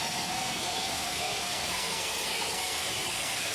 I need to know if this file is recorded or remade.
remade